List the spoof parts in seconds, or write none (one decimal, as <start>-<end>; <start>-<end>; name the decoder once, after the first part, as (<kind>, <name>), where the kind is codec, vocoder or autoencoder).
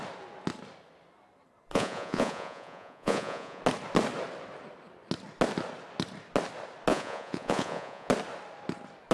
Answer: 1.7-3.6 (vocoder, Vocos); 6.9-8.1